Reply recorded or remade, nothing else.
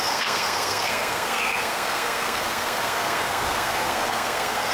remade